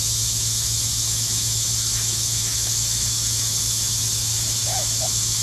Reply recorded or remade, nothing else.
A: remade